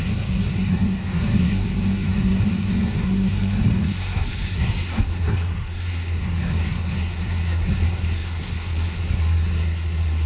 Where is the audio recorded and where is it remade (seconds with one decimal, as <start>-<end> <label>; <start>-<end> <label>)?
0.0-10.3 remade